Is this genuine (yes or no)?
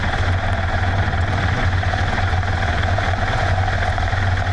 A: no